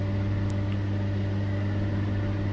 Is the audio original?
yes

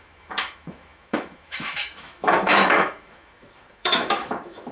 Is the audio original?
no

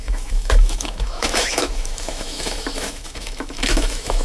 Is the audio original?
no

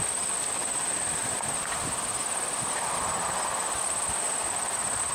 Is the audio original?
yes